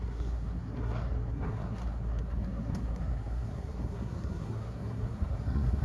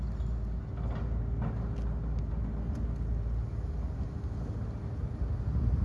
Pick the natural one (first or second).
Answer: second